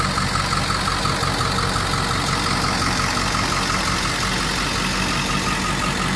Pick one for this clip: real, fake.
real